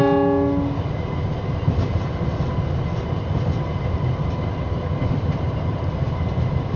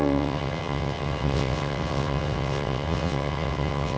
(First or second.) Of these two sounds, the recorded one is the first